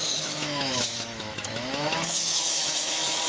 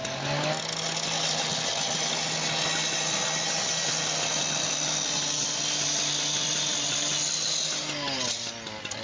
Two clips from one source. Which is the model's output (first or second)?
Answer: first